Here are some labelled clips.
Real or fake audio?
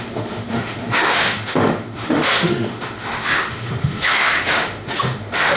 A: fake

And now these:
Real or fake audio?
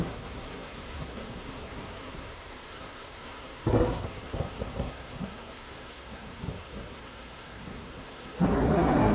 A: fake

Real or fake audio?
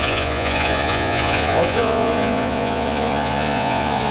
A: fake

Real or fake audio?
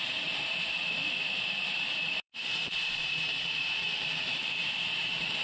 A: fake